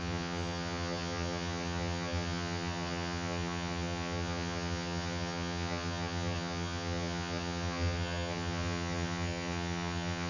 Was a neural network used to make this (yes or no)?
yes